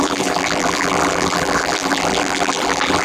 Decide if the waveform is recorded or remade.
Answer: remade